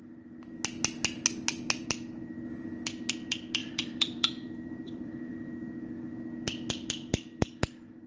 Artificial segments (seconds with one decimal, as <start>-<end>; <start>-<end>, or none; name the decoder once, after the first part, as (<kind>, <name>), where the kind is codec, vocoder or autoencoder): 3.6-5.3 (vocoder, BigVGAN v2); 7.1-8.1